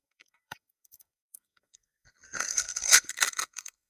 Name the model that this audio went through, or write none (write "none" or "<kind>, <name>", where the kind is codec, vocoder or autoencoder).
codec, SNAC